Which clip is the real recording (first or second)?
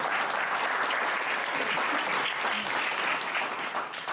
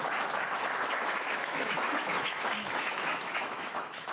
first